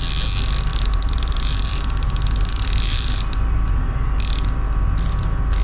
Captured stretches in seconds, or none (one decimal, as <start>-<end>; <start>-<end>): 0.0-0.7; 4.1-5.6